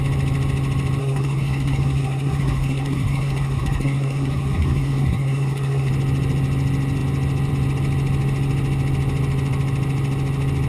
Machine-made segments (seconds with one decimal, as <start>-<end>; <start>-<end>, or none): 1.0-5.9